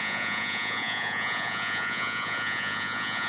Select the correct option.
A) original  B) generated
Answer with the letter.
B